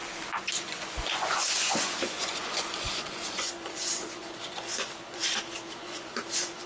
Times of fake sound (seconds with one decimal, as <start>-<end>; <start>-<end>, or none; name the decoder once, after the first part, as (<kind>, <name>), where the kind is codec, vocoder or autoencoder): 0.5-5.2 (vocoder, Vocos); 5.7-6.7